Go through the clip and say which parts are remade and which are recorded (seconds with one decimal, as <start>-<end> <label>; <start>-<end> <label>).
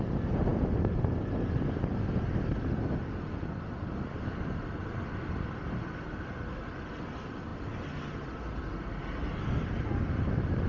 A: 0.0-10.7 recorded